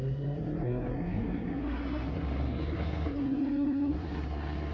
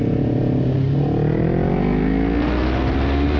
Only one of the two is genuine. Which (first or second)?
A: second